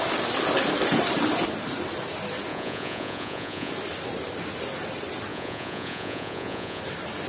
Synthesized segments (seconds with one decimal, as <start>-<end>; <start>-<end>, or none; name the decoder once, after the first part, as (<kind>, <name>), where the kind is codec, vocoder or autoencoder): 2.5-3.7 (vocoder, Vocos); 5.3-6.8